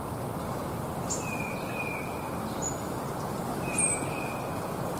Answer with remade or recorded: recorded